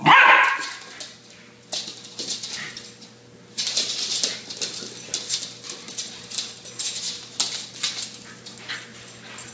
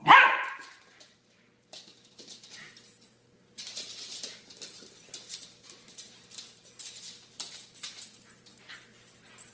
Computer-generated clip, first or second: second